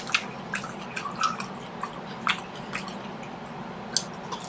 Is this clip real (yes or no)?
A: yes